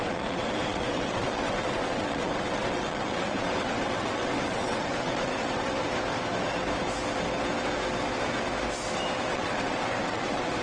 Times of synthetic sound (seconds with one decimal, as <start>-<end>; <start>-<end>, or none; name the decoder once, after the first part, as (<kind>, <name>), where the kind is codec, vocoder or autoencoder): 0.0-5.8 (vocoder, WaveNeXt); 9.3-10.6